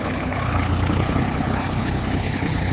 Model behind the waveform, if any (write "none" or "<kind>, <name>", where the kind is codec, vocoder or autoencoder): codec, HILCodec